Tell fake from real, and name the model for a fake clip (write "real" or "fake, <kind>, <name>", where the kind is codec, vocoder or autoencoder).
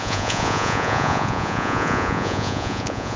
fake, vocoder, Vocos